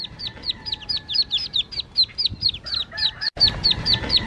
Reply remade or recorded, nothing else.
recorded